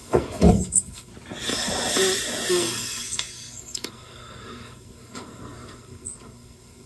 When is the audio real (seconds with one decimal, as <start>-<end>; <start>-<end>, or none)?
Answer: 1.1-2.5